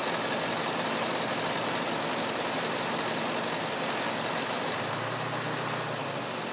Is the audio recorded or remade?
recorded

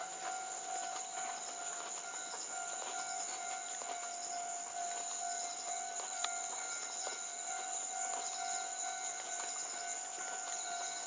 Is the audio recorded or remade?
recorded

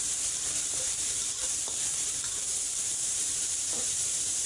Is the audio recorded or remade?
remade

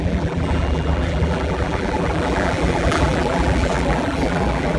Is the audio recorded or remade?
remade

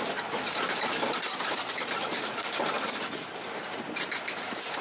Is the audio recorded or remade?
recorded